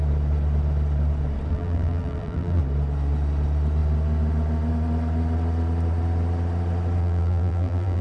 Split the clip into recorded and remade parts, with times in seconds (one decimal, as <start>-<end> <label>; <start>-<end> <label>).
0.0-1.5 recorded; 1.5-2.6 remade; 2.6-7.0 recorded; 7.0-8.0 remade